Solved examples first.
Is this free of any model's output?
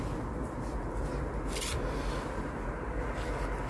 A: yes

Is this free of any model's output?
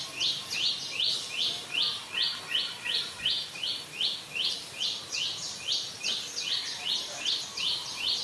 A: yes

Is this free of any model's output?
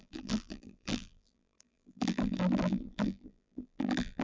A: no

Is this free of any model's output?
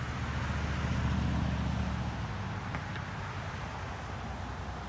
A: yes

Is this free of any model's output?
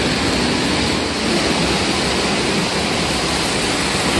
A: yes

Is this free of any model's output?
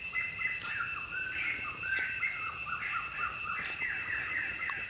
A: yes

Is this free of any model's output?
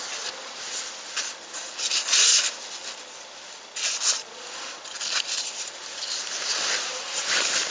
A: yes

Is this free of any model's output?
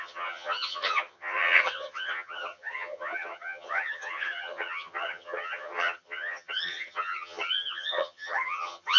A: no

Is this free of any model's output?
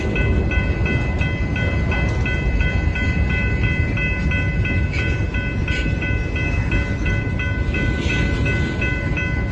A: yes